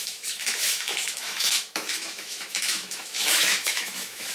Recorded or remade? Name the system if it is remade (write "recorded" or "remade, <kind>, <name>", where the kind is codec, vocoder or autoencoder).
remade, autoencoder, DAC-VAE